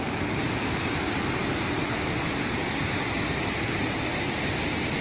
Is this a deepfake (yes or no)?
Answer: no